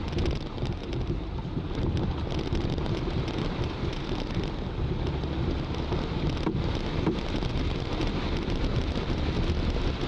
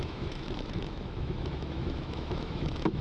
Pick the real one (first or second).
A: first